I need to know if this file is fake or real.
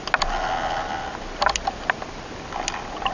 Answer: real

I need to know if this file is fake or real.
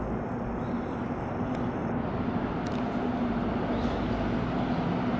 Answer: real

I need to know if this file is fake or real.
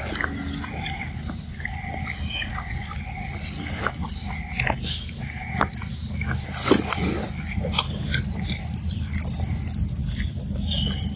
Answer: real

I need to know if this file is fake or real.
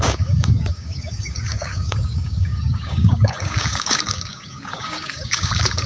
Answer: fake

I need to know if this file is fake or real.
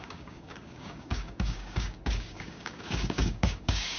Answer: fake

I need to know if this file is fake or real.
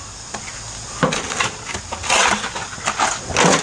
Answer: real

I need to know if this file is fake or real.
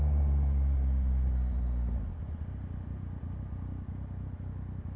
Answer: real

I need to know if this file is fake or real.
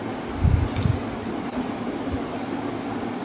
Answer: real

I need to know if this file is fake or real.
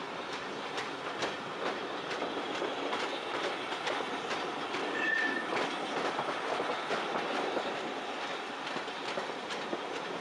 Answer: real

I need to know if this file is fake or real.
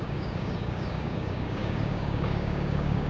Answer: fake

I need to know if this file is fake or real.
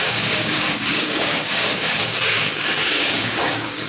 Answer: fake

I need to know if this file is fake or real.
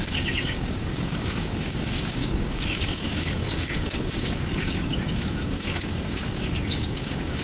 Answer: fake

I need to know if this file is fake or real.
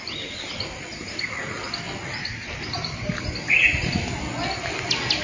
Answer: real